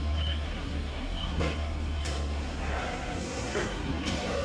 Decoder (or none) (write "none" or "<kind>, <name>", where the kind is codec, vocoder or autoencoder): codec, SNAC